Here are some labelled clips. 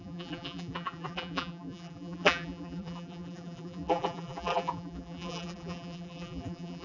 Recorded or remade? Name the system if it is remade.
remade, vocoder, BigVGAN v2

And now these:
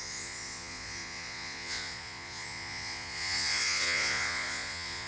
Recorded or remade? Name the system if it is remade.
remade, vocoder, Vocos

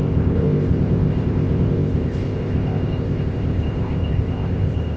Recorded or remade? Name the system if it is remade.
remade, codec, ZipCodec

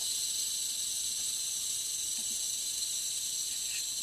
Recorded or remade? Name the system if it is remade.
remade, vocoder, BigVGAN v2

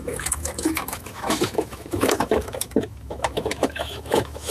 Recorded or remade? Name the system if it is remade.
remade, autoencoder, DAC-VAE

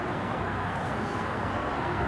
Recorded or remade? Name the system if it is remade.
remade, codec, SNAC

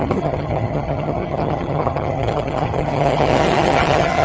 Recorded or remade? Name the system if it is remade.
remade, vocoder, HiFi-GAN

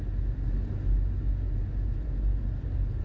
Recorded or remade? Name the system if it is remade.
recorded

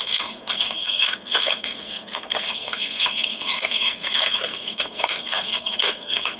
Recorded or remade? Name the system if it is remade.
remade, codec, SNAC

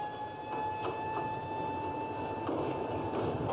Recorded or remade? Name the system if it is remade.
recorded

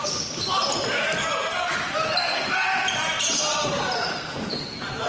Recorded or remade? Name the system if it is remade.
remade, vocoder, BigVGAN v2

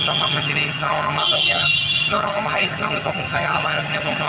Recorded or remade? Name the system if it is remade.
remade, vocoder, HiFi-GAN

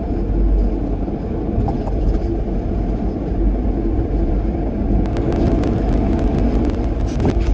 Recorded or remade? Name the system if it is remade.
recorded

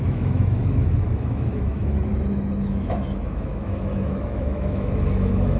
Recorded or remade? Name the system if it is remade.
remade, autoencoder, DAC-VAE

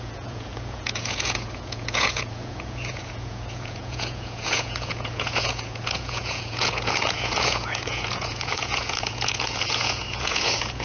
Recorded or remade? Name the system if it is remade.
remade, vocoder, Vocos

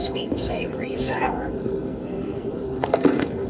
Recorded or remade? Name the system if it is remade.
remade, codec, SNAC